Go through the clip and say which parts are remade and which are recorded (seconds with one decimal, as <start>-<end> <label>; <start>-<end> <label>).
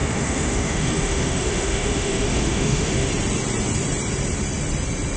0.0-3.1 remade; 3.1-5.2 recorded